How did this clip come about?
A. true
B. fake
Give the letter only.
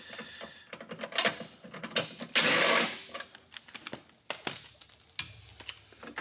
A